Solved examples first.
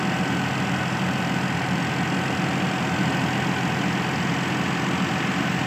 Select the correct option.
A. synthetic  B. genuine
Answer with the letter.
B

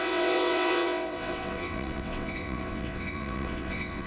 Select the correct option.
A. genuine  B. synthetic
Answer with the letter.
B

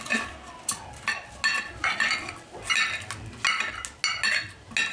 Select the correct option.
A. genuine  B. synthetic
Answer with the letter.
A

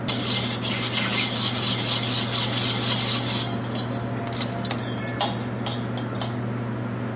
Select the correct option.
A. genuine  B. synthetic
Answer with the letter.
A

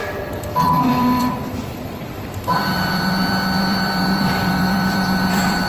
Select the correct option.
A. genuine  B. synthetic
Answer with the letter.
B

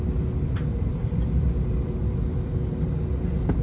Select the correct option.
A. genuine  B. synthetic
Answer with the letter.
A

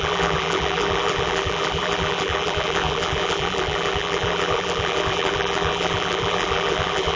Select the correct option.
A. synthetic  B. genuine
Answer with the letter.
A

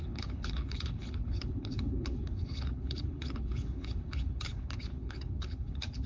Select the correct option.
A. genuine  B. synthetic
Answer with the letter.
B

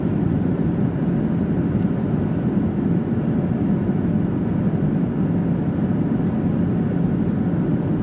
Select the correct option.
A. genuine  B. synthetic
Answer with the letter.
A